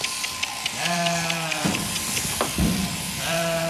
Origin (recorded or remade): remade